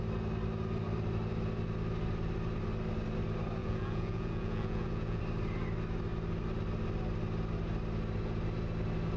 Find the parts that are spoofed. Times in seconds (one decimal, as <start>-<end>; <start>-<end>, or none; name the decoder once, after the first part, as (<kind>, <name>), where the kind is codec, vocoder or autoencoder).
3.6-5.2 (vocoder, Vocos)

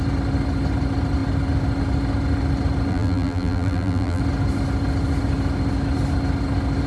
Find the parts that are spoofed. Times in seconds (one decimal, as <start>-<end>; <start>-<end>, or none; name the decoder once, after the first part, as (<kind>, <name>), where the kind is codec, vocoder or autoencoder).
2.9-4.2 (vocoder, BigVGAN v2)

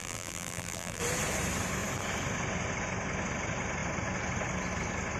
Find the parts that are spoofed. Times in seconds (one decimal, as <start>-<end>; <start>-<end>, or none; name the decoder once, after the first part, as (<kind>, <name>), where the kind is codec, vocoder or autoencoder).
0.0-1.0 (vocoder, BigVGAN v2)

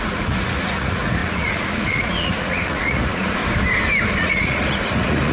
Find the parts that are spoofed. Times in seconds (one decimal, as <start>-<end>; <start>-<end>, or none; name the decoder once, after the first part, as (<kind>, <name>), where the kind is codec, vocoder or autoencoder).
0.0-3.4 (vocoder, Vocos); 4.2-5.3